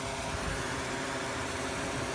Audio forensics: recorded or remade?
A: remade